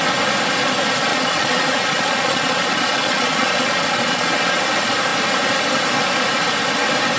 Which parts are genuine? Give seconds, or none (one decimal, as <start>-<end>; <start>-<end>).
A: 0.0-1.1; 4.6-7.2